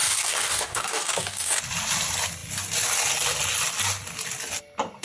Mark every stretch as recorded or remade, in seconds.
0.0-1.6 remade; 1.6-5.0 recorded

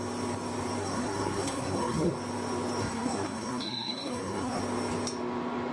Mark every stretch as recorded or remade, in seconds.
0.0-0.8 recorded; 0.8-2.1 remade; 2.1-2.8 recorded; 2.8-4.6 remade; 4.6-5.7 recorded

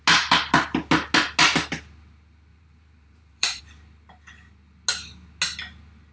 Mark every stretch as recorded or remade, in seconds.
0.0-2.5 recorded; 2.5-3.6 remade; 3.6-6.1 recorded

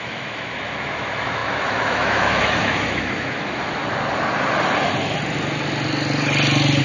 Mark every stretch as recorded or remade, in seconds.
0.0-3.8 remade; 3.8-6.8 recorded

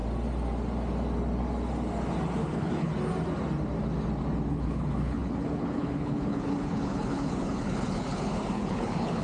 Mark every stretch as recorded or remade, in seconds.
0.0-2.4 recorded; 2.4-2.9 remade; 2.9-4.5 recorded; 4.5-9.2 remade

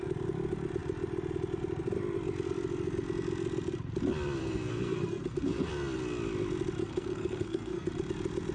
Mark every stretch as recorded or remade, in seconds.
0.0-4.4 recorded; 4.4-5.7 remade; 5.7-6.8 recorded; 6.8-7.9 remade; 7.9-8.5 recorded

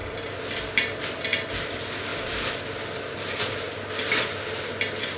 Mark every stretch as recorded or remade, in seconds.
0.0-5.2 recorded

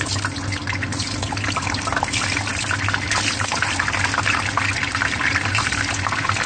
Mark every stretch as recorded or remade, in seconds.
0.0-6.5 recorded